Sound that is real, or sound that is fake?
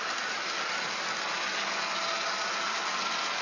real